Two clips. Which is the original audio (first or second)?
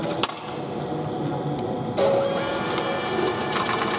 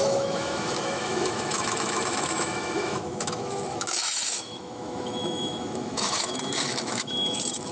first